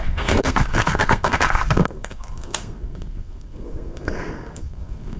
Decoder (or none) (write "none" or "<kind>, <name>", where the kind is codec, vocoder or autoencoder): codec, SNAC